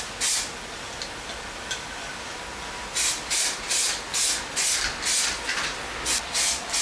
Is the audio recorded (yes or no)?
yes